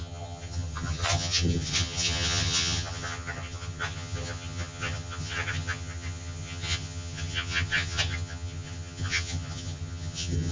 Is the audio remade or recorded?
remade